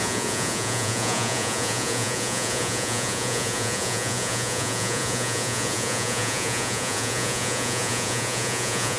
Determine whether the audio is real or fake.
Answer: fake